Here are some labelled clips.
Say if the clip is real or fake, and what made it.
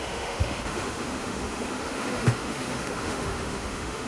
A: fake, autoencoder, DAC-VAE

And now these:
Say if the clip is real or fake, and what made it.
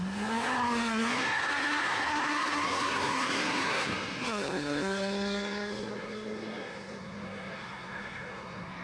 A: fake, codec, SNAC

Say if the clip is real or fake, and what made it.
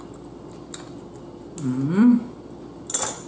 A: real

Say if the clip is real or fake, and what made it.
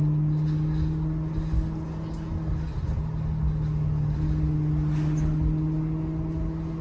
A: real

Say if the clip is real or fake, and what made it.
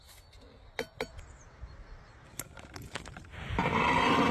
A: real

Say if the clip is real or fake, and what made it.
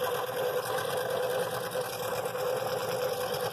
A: real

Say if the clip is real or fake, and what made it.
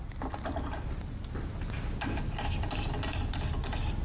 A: real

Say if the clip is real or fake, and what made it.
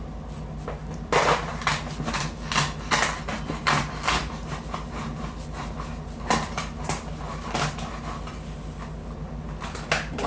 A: real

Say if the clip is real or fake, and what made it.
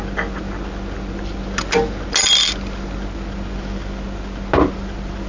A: real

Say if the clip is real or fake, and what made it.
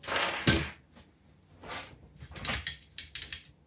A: real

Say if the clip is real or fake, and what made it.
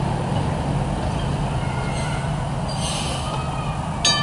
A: real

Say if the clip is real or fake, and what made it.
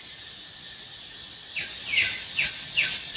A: real